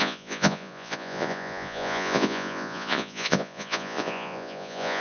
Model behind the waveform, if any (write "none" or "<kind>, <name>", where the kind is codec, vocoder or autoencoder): vocoder, Vocos